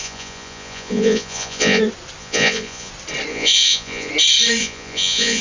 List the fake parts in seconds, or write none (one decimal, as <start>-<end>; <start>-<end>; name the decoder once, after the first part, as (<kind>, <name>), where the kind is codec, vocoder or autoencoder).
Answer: 0.0-1.8 (vocoder, Vocos); 2.2-2.9; 3.3-4.1; 4.6-5.4